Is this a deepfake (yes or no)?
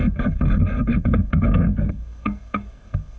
yes